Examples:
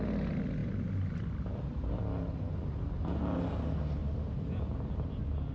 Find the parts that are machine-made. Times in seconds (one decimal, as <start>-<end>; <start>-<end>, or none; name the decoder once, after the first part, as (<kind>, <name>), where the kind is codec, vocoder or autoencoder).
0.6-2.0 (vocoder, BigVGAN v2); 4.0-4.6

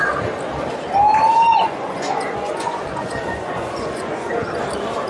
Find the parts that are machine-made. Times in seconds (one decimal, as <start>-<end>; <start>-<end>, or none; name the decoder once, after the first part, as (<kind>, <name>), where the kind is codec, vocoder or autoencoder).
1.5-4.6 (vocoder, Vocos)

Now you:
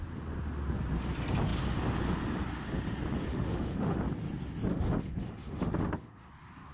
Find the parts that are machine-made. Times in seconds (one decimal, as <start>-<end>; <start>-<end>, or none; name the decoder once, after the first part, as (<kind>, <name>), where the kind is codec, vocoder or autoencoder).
3.3-4.0 (autoencoder, DAC-VAE); 4.7-6.3

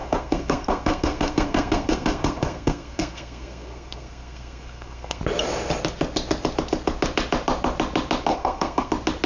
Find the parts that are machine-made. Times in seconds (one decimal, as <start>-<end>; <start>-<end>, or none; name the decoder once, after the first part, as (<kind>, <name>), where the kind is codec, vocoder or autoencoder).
0.0-5.2 (codec, SNAC); 8.3-8.9